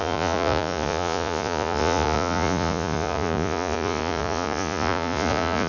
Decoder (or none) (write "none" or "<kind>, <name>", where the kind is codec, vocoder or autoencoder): vocoder, Vocos